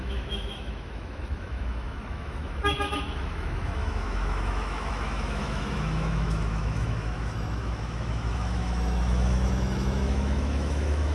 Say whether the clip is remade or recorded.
remade